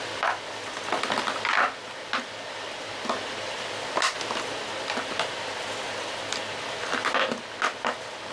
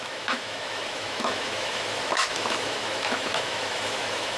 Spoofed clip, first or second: second